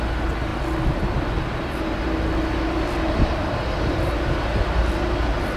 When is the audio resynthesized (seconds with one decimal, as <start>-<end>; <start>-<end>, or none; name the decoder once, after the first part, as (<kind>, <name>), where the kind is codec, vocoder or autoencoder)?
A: none